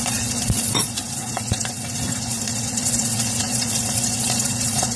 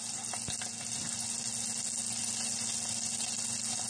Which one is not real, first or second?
first